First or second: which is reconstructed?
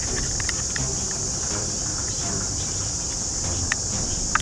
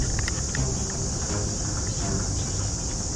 first